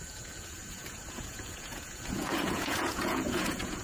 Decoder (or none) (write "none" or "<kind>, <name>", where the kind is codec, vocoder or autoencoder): vocoder, Vocos